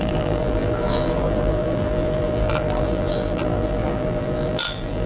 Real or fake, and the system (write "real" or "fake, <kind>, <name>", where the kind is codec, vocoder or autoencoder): fake, vocoder, BigVGAN v2